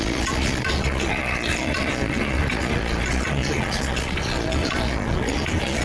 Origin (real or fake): fake